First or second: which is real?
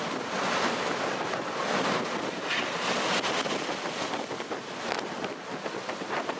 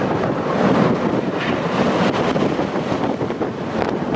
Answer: first